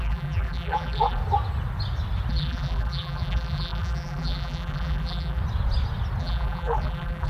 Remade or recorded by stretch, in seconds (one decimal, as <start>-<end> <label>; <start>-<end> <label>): 0.0-1.2 remade; 1.2-2.3 recorded; 2.3-5.4 remade; 5.4-6.2 recorded; 6.2-7.3 remade